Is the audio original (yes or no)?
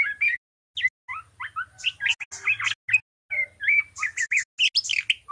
yes